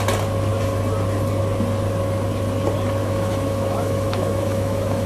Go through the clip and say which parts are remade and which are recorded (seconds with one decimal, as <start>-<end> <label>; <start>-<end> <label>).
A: 0.0-3.0 recorded; 3.0-5.1 remade